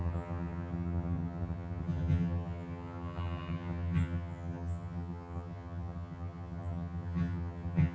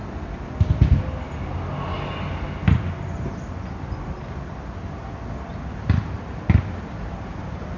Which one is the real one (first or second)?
second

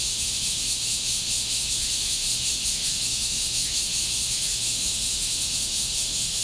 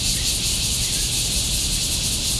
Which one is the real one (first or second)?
second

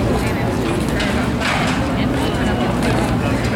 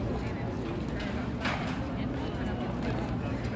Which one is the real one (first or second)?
first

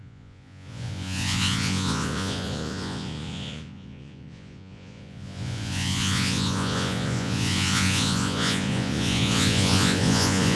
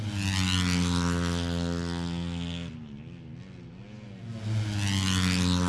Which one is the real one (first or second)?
second